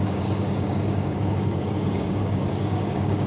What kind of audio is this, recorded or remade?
remade